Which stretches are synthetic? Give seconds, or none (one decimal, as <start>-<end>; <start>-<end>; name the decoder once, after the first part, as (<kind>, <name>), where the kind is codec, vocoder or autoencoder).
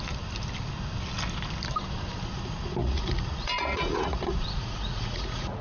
2.8-5.6 (vocoder, Vocos)